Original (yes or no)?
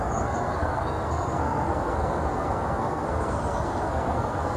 no